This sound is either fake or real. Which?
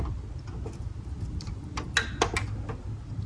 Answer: real